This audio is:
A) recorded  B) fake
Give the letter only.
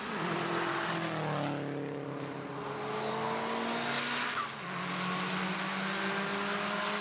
A